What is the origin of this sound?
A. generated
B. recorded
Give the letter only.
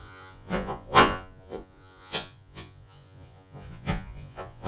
A